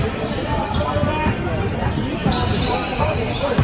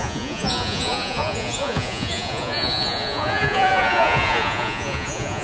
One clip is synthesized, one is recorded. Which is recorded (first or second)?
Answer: first